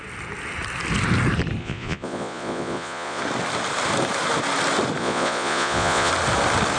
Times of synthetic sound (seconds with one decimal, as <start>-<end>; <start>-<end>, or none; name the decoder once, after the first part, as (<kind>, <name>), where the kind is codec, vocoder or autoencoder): 1.6-3.2 (vocoder, Vocos); 5.0-6.1